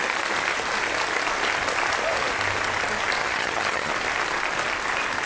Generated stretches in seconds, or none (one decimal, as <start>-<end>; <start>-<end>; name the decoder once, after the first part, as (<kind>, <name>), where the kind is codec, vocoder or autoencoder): 3.2-3.9 (vocoder, HiFi-GAN)